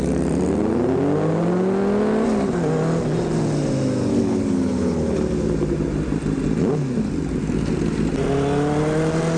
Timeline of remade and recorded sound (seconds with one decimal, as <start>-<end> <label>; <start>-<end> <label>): 0.0-4.1 recorded; 4.1-5.2 remade; 5.2-9.4 recorded